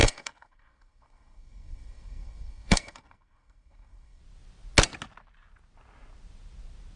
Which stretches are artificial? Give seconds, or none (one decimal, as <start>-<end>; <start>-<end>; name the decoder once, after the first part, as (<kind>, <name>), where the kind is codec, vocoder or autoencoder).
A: 0.0-4.2 (codec, SNAC)